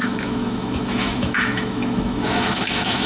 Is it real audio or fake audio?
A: fake